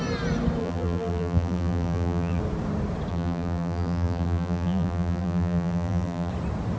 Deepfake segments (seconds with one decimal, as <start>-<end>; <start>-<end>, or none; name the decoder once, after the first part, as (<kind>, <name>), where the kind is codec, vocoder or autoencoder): 0.6-2.4 (vocoder, BigVGAN v2); 3.1-6.3